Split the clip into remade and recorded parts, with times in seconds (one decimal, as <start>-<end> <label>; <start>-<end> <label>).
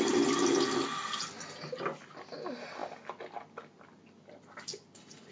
0.0-5.3 recorded